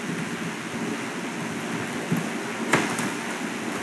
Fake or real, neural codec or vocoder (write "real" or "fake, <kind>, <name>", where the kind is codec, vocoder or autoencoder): real